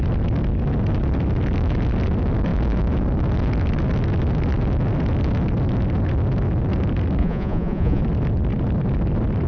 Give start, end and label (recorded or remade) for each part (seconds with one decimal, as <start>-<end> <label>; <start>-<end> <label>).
0.0-7.2 recorded; 7.2-8.0 remade; 8.0-9.5 recorded